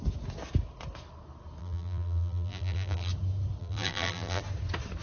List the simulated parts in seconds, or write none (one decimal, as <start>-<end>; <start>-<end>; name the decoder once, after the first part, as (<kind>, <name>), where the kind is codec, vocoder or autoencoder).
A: 1.6-3.1 (vocoder, BigVGAN v2); 3.6-4.4